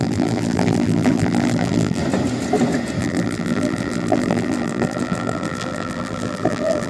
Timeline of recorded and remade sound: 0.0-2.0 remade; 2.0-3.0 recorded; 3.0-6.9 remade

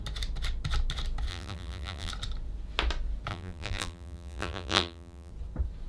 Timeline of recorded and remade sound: 0.0-1.3 recorded; 1.3-2.1 remade; 2.1-3.3 recorded; 3.3-5.3 remade; 5.3-5.9 recorded

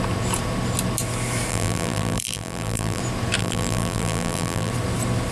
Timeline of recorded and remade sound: 0.0-1.5 recorded; 1.5-3.0 remade; 3.0-3.4 recorded; 3.4-4.7 remade; 4.7-5.3 recorded

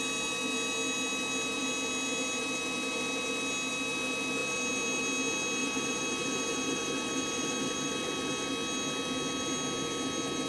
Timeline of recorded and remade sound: 0.0-5.6 recorded; 5.6-8.5 remade; 8.5-10.5 recorded